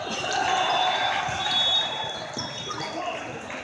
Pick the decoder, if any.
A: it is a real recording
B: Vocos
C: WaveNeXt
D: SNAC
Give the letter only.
A